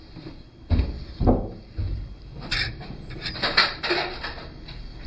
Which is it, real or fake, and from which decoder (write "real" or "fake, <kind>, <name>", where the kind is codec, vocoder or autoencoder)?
real